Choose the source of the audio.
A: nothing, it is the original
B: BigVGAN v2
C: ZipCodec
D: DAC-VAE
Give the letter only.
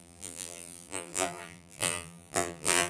B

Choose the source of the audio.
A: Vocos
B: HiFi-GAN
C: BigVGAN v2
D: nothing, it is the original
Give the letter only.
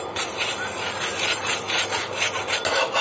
D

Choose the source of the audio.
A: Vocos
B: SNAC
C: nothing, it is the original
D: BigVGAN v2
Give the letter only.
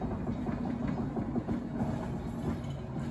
C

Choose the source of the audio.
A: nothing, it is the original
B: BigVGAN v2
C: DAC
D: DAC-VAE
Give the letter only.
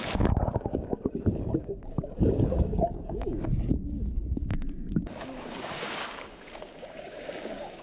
C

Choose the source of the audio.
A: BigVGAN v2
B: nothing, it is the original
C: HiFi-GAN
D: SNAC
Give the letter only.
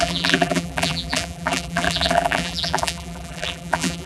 A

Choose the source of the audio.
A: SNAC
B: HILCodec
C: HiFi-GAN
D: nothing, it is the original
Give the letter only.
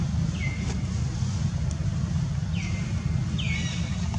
D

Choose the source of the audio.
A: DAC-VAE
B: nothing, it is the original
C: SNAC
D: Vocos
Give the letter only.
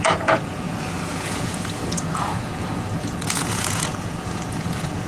D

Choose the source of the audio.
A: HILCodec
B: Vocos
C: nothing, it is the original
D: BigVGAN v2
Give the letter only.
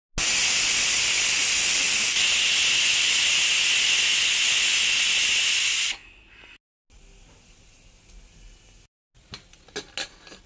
C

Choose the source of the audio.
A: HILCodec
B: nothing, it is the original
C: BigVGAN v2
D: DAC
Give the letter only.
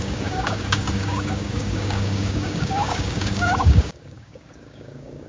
D